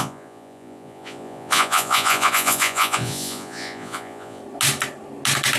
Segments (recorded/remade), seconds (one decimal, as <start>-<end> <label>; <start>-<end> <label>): 0.0-4.4 remade; 4.4-5.6 recorded